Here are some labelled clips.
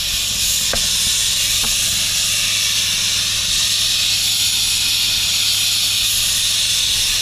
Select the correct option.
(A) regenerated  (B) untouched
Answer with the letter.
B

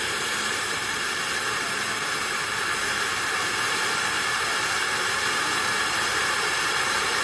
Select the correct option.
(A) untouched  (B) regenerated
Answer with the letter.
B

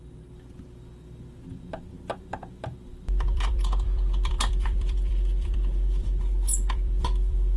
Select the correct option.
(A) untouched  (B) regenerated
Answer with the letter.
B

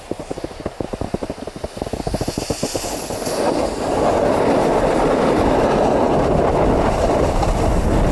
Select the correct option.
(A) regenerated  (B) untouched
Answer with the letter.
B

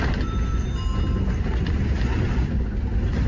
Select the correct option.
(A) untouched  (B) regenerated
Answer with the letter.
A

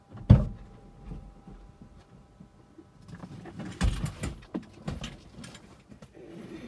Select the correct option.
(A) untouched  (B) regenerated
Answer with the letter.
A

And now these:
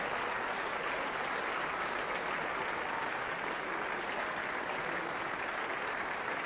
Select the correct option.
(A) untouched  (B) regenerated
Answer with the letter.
A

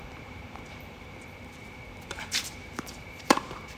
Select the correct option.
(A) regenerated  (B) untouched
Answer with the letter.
A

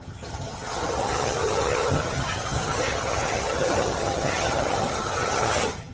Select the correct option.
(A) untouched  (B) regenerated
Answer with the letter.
B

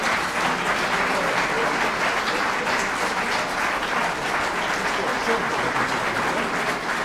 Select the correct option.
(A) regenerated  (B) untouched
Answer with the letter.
B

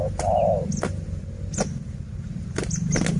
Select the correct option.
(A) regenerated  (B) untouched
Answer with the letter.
B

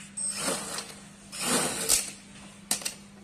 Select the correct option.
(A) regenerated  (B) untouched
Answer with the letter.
B